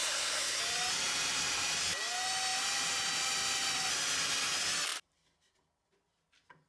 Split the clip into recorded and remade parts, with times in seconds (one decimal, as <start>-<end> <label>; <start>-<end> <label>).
0.0-0.6 remade; 0.6-6.7 recorded